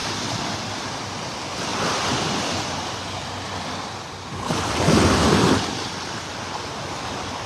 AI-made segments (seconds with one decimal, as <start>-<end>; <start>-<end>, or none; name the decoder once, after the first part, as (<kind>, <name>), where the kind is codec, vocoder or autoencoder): 0.0-0.9 (vocoder, BigVGAN v2)